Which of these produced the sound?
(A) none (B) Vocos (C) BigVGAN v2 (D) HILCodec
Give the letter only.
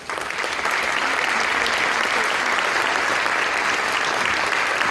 A